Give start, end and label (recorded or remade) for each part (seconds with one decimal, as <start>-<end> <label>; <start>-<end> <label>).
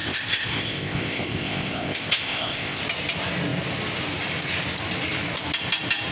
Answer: 0.0-2.8 remade; 2.8-6.1 recorded